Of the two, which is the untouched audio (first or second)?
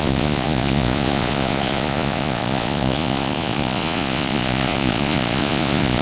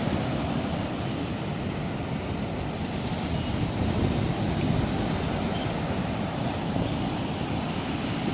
second